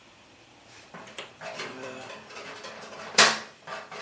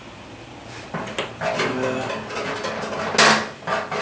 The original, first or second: second